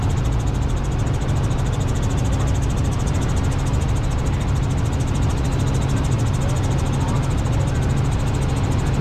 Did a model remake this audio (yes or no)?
no